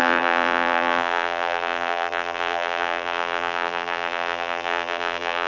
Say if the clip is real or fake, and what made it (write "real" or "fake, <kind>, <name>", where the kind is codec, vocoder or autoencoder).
fake, vocoder, BigVGAN v2